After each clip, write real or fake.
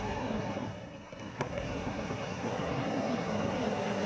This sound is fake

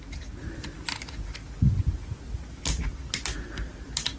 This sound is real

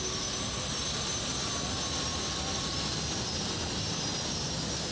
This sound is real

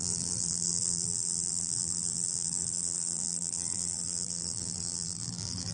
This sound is fake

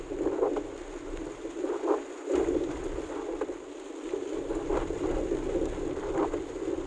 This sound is real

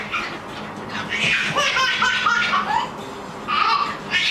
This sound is real